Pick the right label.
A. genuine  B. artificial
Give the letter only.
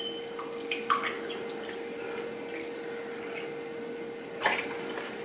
A